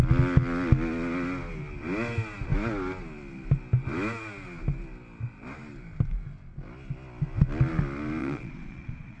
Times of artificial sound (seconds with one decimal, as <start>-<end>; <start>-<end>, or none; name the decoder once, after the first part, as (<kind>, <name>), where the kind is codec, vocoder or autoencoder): 8.2-9.2 (vocoder, Vocos)